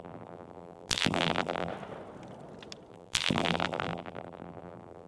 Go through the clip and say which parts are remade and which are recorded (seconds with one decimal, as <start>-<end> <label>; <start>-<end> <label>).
0.0-1.7 remade; 1.7-2.9 recorded; 2.9-5.1 remade